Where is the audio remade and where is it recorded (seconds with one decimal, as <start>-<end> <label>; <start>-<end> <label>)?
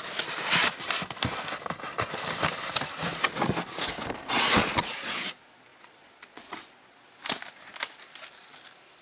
0.0-4.6 recorded; 4.6-5.3 remade; 5.3-5.7 recorded; 5.7-6.7 remade; 6.7-9.0 recorded